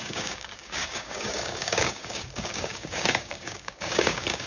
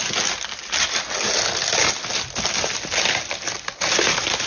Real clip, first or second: second